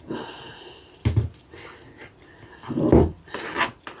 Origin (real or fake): real